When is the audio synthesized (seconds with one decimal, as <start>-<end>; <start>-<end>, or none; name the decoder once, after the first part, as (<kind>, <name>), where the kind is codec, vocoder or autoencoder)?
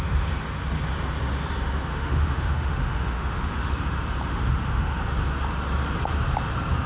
1.9-3.7 (autoencoder, DAC-VAE); 4.3-5.0